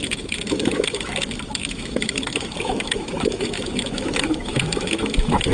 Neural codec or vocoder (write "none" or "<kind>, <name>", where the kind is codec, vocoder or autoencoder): autoencoder, DAC-VAE